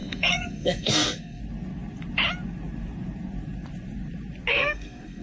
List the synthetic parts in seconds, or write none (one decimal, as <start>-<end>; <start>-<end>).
0.0-1.4; 4.5-5.2